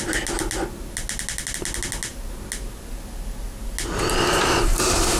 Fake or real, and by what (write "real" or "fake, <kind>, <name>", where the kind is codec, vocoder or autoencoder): real